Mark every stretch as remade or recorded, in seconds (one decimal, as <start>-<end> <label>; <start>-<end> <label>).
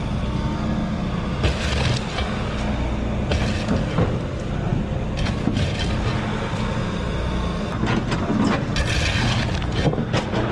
0.0-10.5 recorded